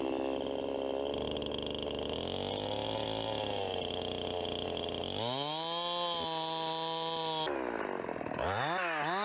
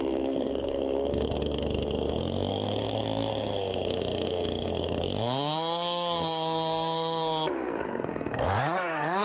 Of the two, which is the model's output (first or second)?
second